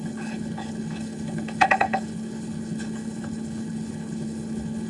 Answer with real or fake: fake